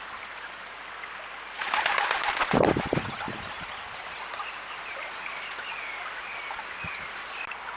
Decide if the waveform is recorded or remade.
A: recorded